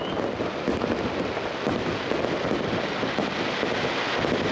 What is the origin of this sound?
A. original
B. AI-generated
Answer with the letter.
A